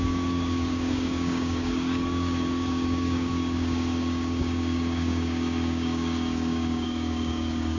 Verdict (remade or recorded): remade